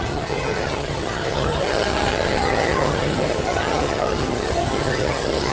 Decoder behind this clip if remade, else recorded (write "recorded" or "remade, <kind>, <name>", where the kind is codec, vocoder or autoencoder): remade, vocoder, HiFi-GAN